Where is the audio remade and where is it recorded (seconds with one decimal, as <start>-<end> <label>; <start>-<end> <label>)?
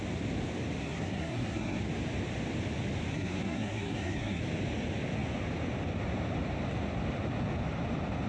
0.0-0.8 recorded; 0.8-1.8 remade; 1.8-3.1 recorded; 3.1-4.4 remade; 4.4-8.3 recorded